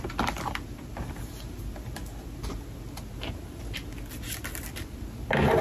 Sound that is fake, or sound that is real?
real